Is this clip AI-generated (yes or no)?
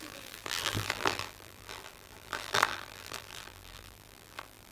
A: yes